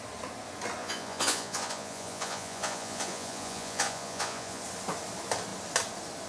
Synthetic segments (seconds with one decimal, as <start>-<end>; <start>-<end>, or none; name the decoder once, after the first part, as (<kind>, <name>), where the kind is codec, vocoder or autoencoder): 0.8-4.6 (vocoder, Vocos)